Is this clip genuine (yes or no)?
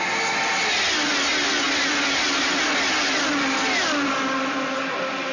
yes